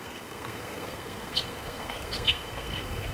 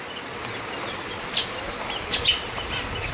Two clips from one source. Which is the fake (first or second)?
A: first